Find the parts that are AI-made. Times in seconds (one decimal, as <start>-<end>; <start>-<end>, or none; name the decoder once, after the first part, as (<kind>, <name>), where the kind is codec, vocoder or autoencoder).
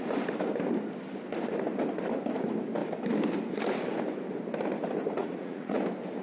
5.2-5.8 (vocoder, Vocos)